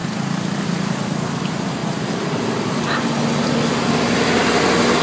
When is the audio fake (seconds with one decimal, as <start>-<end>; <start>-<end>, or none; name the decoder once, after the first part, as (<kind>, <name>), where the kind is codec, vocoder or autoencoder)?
1.4-1.8 (vocoder, BigVGAN v2)